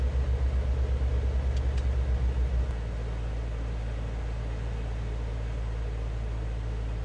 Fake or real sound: real